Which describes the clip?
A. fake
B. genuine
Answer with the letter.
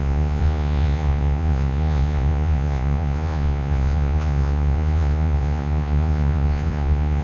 A